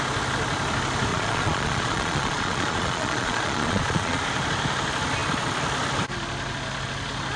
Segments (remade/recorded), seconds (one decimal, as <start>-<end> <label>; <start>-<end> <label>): 0.0-1.1 recorded; 1.1-4.2 remade; 4.2-7.4 recorded